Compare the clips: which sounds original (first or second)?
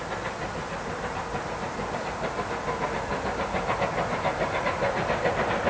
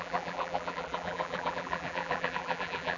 first